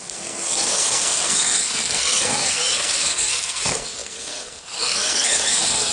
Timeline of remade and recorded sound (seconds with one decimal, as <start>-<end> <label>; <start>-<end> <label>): 0.0-5.9 remade